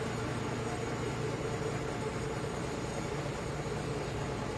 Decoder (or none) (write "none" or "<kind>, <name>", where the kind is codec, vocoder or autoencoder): none